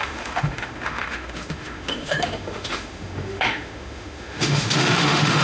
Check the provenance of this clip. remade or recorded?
remade